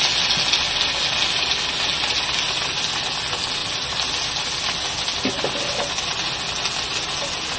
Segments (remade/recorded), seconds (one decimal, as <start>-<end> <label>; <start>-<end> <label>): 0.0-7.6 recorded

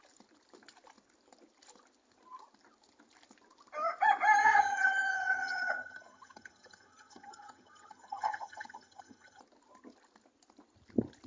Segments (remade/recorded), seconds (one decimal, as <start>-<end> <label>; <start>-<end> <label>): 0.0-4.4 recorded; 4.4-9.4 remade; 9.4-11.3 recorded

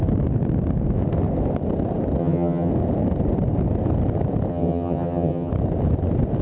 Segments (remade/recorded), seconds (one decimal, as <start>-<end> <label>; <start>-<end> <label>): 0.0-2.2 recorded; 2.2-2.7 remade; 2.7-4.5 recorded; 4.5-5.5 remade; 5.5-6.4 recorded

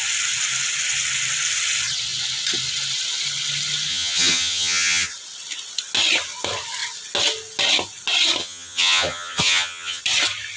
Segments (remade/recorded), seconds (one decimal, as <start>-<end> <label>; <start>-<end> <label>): 0.0-3.9 recorded; 3.9-5.1 remade; 5.1-8.4 recorded; 8.4-10.0 remade; 10.0-10.6 recorded

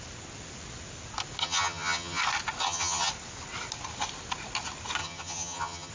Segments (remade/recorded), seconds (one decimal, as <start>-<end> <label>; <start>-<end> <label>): 0.0-1.4 recorded; 1.4-2.2 remade; 2.2-2.6 recorded; 2.6-3.1 remade; 3.1-5.0 recorded; 5.0-5.9 remade

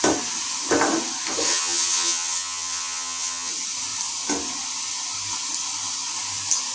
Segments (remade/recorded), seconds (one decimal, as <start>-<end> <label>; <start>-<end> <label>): 0.0-1.5 recorded; 1.5-3.5 remade; 3.5-6.7 recorded